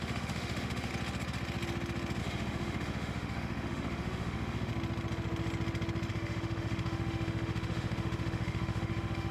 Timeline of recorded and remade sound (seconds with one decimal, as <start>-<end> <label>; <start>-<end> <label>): 0.0-0.9 remade; 0.9-2.2 recorded; 2.2-4.7 remade; 4.7-6.1 recorded; 6.1-9.3 remade